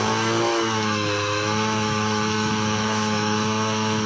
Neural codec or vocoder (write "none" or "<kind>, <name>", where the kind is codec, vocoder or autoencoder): autoencoder, DAC-VAE